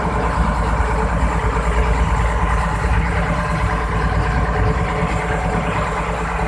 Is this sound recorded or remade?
recorded